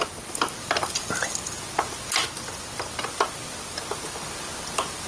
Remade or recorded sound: recorded